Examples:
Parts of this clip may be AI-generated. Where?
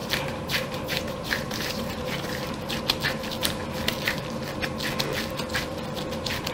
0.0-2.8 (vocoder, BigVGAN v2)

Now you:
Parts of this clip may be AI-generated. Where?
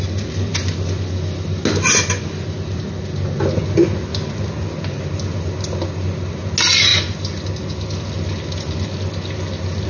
none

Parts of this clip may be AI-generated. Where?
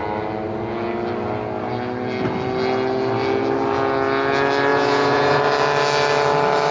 4.7-5.4 (vocoder, Vocos)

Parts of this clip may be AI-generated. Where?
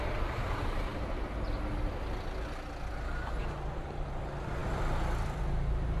none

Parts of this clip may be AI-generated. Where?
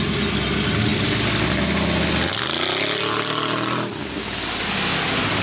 none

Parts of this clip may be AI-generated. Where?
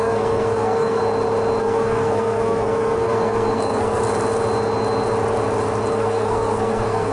0.0-1.0 (codec, SNAC); 1.6-4.0; 5.9-7.1